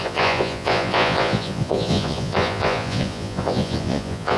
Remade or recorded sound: remade